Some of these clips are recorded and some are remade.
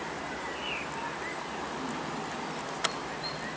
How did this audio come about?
recorded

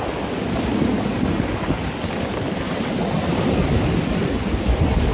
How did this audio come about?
recorded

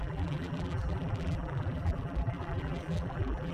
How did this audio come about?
remade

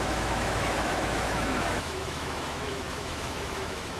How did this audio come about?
remade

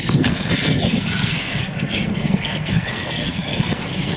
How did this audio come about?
remade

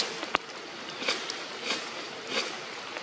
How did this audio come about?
recorded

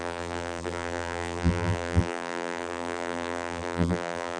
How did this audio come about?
remade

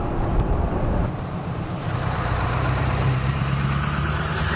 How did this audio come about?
remade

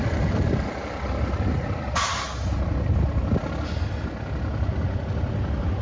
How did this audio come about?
recorded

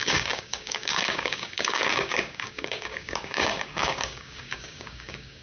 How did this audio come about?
remade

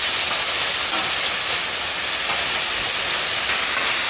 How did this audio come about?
recorded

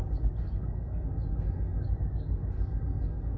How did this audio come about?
remade